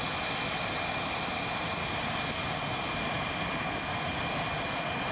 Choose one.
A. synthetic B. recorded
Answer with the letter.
B